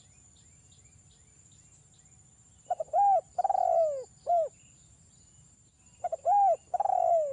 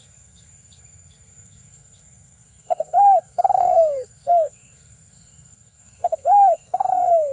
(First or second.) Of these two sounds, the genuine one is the first